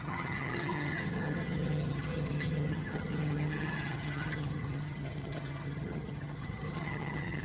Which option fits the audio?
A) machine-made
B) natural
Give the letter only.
A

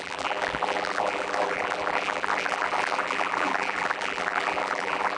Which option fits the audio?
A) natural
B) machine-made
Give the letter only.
B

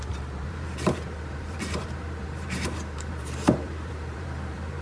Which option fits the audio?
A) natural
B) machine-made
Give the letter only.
B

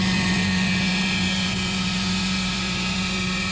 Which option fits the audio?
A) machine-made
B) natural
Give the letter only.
A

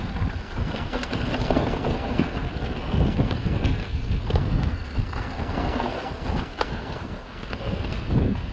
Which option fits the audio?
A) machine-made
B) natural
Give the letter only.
A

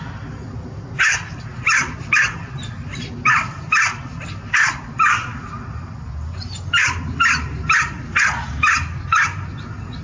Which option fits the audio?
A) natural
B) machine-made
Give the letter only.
A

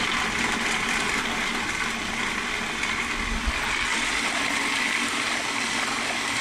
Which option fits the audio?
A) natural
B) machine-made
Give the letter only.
A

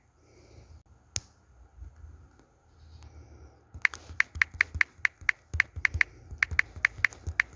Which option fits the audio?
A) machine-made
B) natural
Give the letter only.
B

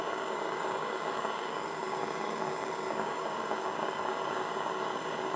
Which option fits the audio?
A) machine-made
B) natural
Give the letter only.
A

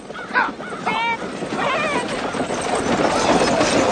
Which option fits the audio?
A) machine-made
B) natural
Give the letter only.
B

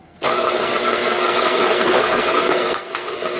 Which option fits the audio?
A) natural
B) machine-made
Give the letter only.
B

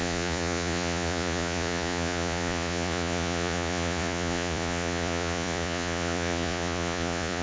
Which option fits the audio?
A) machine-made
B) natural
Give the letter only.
A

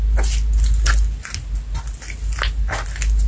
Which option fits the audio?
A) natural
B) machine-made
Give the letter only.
A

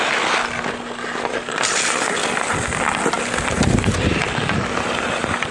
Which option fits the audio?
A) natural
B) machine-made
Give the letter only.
A